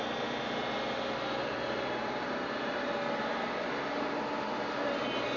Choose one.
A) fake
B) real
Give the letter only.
B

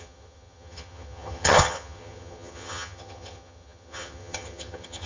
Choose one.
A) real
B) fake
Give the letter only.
B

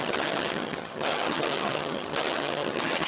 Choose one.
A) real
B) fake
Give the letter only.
B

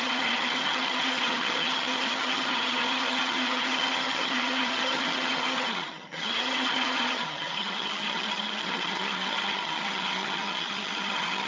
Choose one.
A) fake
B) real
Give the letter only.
A